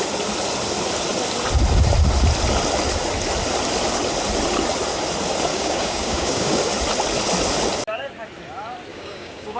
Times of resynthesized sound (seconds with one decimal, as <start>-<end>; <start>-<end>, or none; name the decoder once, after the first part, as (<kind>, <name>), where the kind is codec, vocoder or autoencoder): 5.5-6.6 (codec, DAC); 8.9-9.6